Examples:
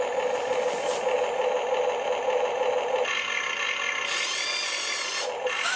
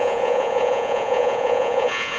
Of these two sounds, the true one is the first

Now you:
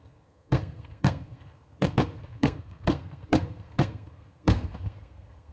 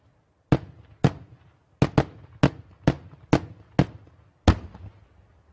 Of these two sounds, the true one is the second